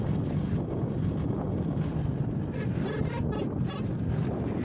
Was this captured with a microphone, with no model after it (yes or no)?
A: yes